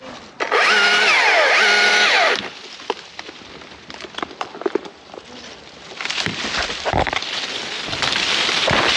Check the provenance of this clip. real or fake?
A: real